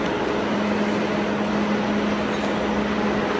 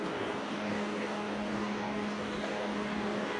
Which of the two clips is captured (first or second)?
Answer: first